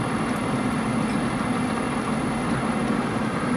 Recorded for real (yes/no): yes